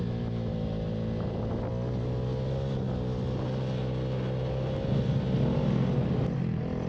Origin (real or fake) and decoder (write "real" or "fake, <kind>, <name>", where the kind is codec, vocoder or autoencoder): real